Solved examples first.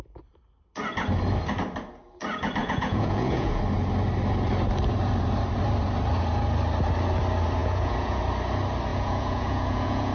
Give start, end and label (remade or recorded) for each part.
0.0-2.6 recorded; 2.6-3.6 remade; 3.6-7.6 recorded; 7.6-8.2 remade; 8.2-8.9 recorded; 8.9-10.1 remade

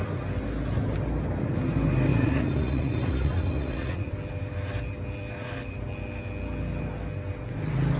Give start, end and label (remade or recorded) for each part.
0.0-2.1 recorded; 2.1-4.1 remade; 4.1-8.0 recorded

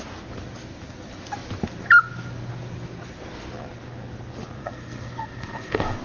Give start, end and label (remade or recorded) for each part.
0.0-4.6 recorded; 4.6-6.0 remade

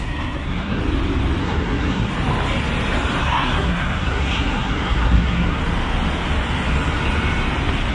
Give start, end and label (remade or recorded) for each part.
0.0-0.8 remade; 0.8-1.4 recorded; 1.4-2.1 remade; 2.1-3.2 recorded; 3.2-5.6 remade; 5.6-7.9 recorded

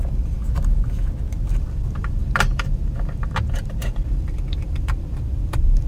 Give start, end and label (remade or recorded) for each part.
0.0-0.4 remade; 0.4-1.5 recorded; 1.5-5.9 remade

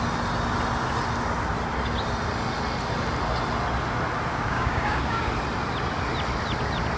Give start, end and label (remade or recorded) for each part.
0.0-4.3 recorded; 4.3-5.3 remade; 5.3-7.0 recorded

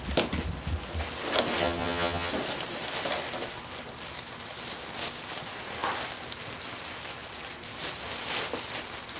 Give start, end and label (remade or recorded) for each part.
0.0-1.6 recorded; 1.6-2.3 remade; 2.3-9.2 recorded

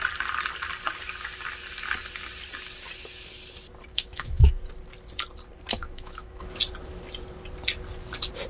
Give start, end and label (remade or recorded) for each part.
0.0-3.9 recorded; 3.9-4.5 remade; 4.5-5.8 recorded; 5.8-6.6 remade; 6.6-8.5 recorded